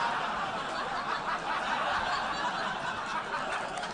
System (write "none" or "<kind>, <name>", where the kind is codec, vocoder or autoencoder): none